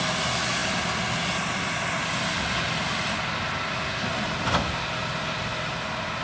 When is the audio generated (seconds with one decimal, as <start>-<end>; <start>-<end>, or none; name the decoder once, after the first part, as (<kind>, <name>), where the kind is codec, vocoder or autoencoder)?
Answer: none